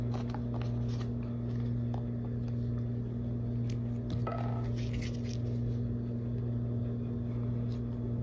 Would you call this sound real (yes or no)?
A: yes